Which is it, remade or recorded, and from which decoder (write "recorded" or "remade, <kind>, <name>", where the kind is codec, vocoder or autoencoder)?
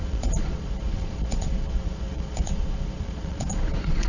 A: remade, vocoder, Vocos